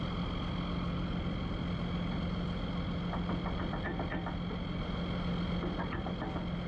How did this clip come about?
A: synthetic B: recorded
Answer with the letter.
B